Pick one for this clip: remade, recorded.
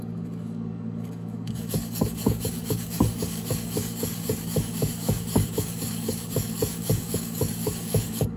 remade